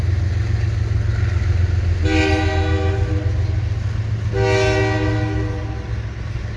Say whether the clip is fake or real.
real